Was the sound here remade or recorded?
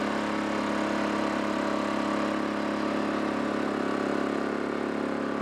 recorded